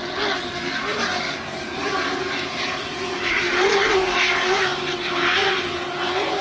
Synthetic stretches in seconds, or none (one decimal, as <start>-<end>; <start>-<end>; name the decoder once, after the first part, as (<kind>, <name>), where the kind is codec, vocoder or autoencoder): 0.9-3.7 (vocoder, BigVGAN v2)